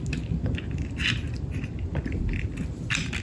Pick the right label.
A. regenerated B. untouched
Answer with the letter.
B